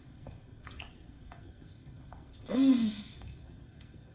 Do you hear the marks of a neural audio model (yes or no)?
yes